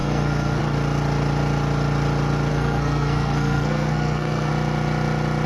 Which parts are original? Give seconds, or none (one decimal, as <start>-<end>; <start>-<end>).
0.6-2.5; 4.5-5.5